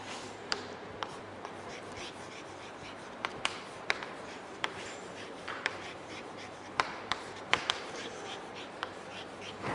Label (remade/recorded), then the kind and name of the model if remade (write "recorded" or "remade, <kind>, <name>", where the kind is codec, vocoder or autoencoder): remade, vocoder, BigVGAN v2